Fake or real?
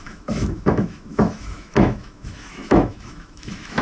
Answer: fake